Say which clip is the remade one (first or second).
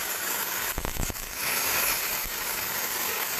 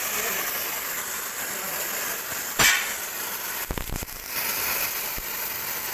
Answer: first